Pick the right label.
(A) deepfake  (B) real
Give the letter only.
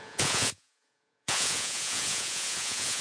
A